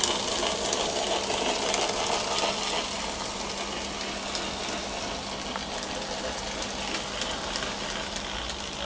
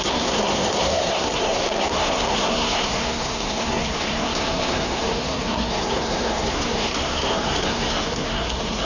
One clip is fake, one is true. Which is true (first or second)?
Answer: first